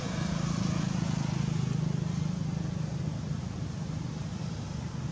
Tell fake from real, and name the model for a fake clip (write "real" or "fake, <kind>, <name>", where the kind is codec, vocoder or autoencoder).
real